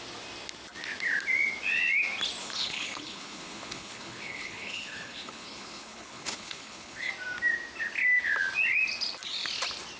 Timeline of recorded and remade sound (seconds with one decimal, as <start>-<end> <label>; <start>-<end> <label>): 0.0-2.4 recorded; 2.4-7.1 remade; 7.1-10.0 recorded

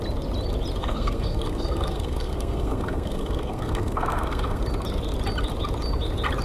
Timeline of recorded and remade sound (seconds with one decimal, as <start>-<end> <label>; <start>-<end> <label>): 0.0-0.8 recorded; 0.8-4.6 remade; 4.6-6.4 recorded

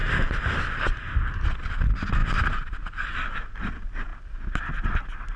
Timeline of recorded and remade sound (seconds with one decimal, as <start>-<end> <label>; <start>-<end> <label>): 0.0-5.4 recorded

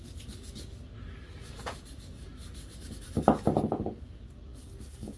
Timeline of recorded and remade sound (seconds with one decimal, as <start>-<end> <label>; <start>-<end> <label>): 0.0-5.2 remade

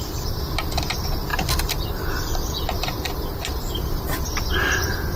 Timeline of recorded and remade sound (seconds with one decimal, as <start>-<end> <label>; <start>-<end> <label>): 0.0-5.2 recorded

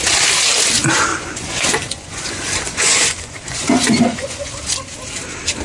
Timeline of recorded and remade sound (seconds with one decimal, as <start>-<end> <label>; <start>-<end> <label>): 0.0-1.1 recorded; 1.1-4.5 remade; 4.5-5.6 recorded